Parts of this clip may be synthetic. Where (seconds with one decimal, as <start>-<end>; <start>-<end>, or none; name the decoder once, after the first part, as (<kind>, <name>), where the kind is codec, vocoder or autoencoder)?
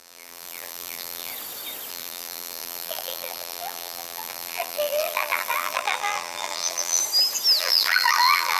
0.0-1.3 (vocoder, BigVGAN v2); 1.9-7.0; 7.6-8.6